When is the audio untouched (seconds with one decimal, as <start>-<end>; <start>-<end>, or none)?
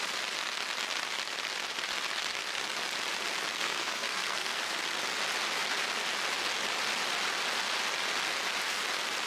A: 0.0-3.5; 4.6-9.3